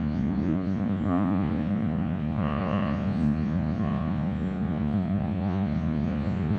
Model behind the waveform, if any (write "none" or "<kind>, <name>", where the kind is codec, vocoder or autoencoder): vocoder, Vocos